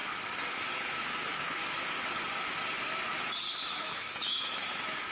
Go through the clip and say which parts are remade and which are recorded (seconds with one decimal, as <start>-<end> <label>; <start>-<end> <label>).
0.0-0.7 recorded; 0.7-1.6 remade; 1.6-3.7 recorded; 3.7-5.1 remade